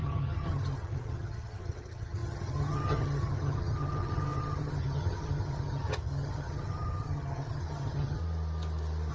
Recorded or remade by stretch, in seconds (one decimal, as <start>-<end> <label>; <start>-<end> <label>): 0.0-8.2 remade; 8.2-9.1 recorded